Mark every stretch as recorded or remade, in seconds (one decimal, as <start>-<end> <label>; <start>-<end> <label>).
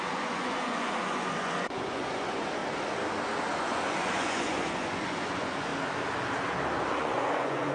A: 0.0-2.6 remade; 2.6-3.5 recorded; 3.5-5.7 remade; 5.7-6.9 recorded; 6.9-7.7 remade